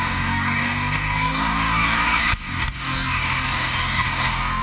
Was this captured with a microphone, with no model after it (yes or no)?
no